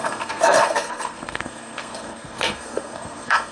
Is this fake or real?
fake